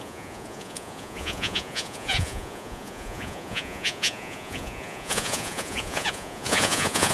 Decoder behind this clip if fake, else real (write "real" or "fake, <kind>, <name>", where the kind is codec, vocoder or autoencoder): fake, vocoder, Vocos